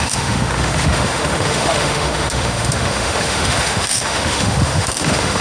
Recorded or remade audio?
remade